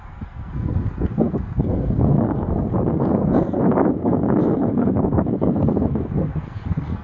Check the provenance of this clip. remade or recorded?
remade